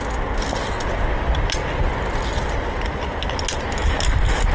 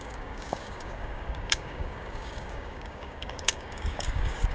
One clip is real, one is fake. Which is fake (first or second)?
second